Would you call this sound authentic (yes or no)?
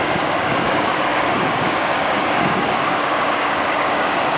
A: no